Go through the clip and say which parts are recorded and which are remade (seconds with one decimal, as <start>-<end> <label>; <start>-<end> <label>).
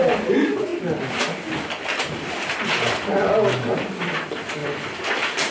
0.0-0.7 remade; 0.7-4.0 recorded; 4.0-5.5 remade